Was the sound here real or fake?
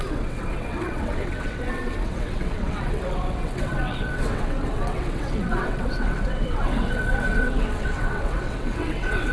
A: fake